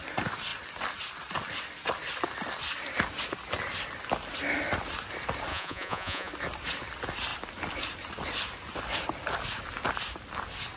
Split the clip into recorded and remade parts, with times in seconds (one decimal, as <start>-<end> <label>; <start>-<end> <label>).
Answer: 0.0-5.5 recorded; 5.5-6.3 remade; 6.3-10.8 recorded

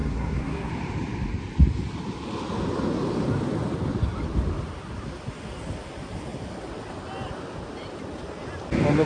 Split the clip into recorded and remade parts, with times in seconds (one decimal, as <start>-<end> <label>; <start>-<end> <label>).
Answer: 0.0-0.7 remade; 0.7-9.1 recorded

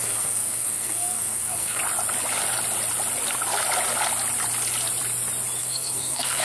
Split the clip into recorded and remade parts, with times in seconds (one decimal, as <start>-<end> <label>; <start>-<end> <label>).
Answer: 0.0-1.8 remade; 1.8-5.6 recorded; 5.6-6.4 remade

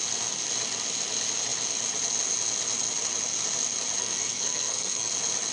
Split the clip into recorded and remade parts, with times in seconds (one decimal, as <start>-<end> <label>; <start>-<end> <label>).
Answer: 0.0-4.0 recorded; 4.0-5.1 remade; 5.1-5.5 recorded

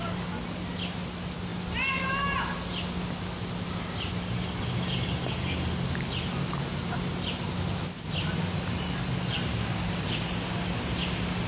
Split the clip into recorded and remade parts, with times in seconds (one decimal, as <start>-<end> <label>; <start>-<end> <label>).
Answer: 0.0-11.5 recorded

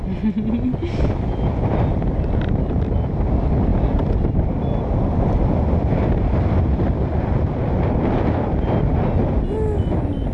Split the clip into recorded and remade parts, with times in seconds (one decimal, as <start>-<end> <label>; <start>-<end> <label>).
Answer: 0.0-10.3 recorded

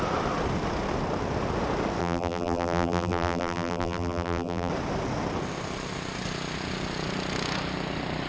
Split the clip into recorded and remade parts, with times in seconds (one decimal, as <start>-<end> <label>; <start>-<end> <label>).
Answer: 0.0-2.0 recorded; 2.0-4.7 remade; 4.7-8.3 recorded

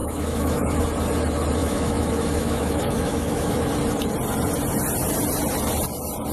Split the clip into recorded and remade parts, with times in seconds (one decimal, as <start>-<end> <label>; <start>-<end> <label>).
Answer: 0.0-0.8 remade; 0.8-1.6 recorded; 1.6-3.7 remade; 3.7-6.3 recorded